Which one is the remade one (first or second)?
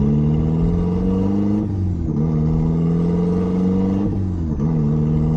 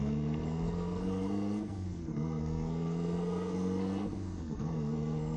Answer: second